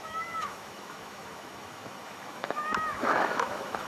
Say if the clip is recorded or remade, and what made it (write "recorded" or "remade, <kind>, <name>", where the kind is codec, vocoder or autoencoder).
remade, autoencoder, DAC-VAE